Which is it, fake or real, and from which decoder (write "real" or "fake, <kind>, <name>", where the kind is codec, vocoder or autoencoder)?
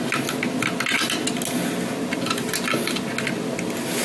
real